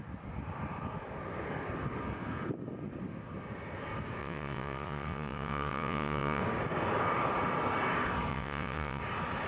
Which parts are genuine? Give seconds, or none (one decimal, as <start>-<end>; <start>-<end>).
0.0-4.2; 6.4-8.3; 9.0-9.5